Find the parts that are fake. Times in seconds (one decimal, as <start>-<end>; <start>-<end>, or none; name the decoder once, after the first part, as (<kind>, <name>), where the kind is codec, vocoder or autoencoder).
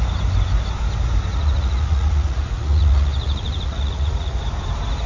1.3-4.4 (vocoder, Vocos)